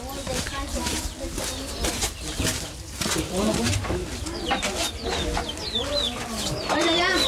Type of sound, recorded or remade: recorded